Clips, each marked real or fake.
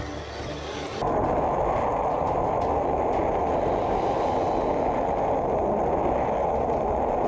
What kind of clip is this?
real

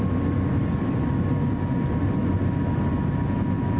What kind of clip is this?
real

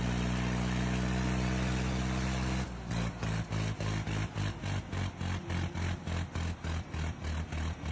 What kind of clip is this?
real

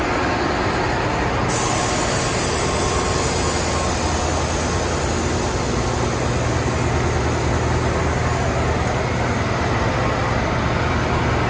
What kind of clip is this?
real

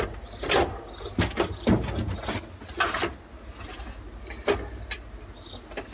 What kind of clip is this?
real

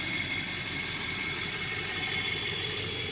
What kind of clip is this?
real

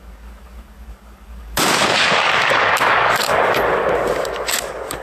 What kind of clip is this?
fake